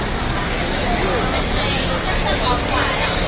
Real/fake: real